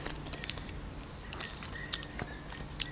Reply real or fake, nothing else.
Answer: real